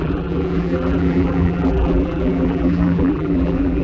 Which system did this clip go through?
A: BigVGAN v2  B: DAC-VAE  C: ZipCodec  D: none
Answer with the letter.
A